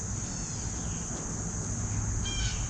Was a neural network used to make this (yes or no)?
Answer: no